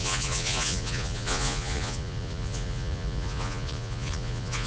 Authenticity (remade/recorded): remade